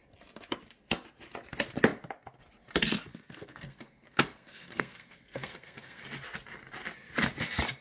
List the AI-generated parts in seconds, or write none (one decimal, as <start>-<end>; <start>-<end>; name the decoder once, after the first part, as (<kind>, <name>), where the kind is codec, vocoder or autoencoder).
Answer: 3.1-6.0 (codec, SNAC)